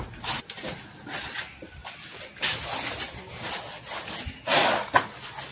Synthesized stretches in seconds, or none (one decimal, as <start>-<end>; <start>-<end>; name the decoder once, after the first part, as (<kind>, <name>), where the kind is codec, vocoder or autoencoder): 1.8-3.4 (vocoder, BigVGAN v2)